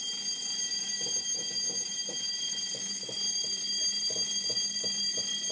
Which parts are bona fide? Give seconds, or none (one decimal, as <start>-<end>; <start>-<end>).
0.0-5.5